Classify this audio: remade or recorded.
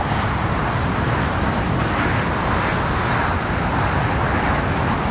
recorded